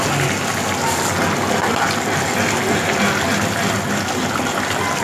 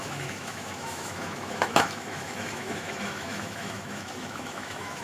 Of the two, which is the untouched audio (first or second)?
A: first